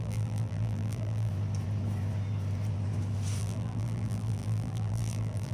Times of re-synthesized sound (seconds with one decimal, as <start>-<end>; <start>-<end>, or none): 0.0-1.3; 3.4-5.5